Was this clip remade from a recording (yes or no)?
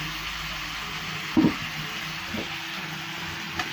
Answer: no